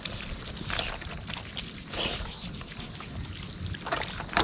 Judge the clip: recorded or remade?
recorded